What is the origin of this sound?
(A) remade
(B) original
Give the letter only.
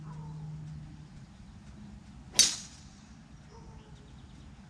B